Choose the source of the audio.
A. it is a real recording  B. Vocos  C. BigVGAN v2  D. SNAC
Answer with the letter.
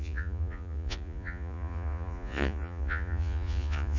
B